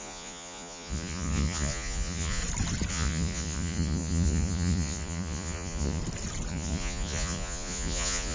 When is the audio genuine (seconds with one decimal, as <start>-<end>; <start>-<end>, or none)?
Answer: 2.4-2.9; 6.0-6.5